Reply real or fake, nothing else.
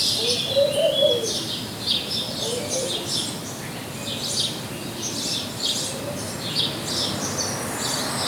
real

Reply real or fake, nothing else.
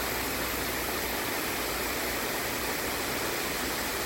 real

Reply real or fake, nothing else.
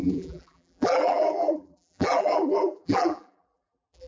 fake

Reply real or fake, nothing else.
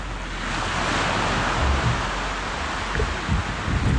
real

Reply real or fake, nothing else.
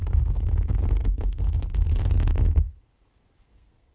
fake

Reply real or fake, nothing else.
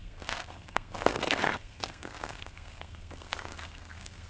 fake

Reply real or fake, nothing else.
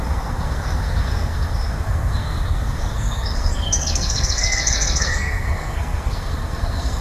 fake